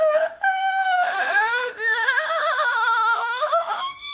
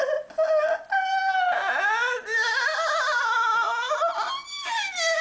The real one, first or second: second